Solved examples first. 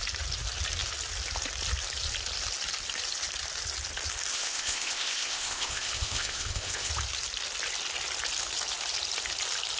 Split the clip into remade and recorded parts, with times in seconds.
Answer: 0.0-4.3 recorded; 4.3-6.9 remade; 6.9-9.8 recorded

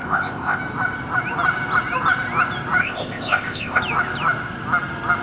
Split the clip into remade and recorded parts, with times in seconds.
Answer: 0.0-0.6 remade; 0.6-2.8 recorded; 2.8-3.8 remade; 3.8-5.2 recorded

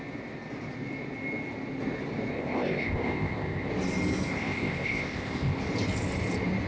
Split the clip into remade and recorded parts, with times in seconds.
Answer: 0.0-2.3 recorded; 2.3-3.7 remade; 3.7-4.3 recorded; 4.3-5.6 remade; 5.6-6.7 recorded

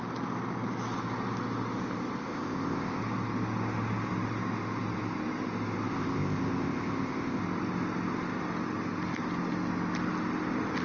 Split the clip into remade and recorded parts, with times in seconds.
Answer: 0.0-2.2 recorded; 2.2-3.0 remade; 3.0-5.9 recorded; 5.9-7.4 remade; 7.4-10.8 recorded

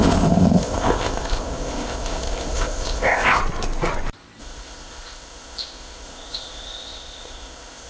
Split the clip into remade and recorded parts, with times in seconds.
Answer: 0.0-3.4 remade; 3.4-4.4 recorded; 4.4-7.9 remade

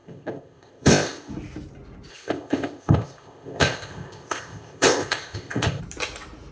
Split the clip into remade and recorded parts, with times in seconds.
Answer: 0.0-1.3 remade; 1.3-2.1 recorded; 2.1-5.8 remade; 5.8-6.5 recorded

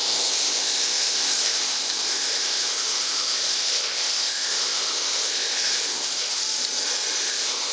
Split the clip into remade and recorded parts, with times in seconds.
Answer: 0.0-6.4 remade; 6.4-7.2 recorded; 7.2-7.7 remade